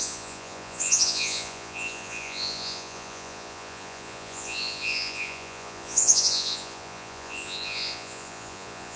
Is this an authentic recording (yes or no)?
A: no